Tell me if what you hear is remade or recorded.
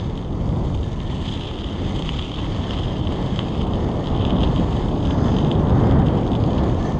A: recorded